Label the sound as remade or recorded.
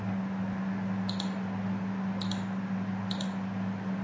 recorded